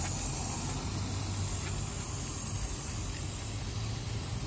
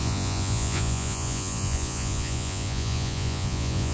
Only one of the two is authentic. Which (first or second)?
first